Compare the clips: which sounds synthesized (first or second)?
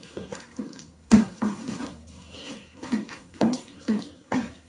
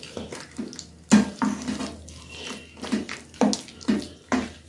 first